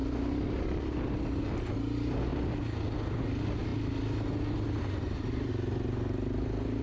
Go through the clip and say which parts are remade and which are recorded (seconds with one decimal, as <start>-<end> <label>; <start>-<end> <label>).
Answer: 0.0-6.8 recorded